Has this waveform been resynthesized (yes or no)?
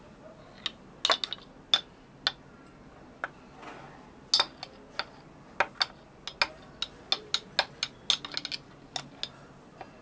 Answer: no